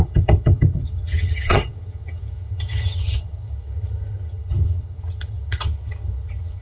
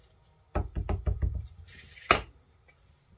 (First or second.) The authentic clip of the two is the second